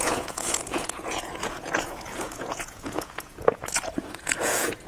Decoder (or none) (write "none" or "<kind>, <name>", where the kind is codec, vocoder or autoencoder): vocoder, Vocos